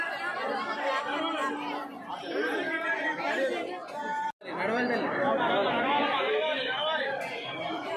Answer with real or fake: real